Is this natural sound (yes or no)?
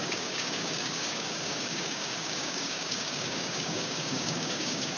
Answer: no